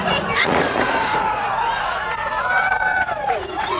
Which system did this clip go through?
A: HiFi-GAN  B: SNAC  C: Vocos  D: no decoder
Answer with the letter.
C